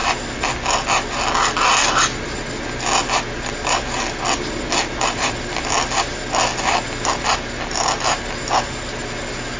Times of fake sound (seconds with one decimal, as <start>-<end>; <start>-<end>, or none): none